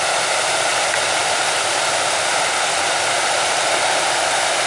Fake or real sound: real